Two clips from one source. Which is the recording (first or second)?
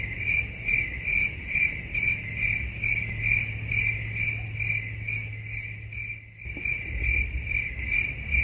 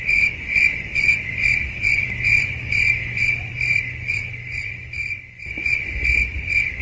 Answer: first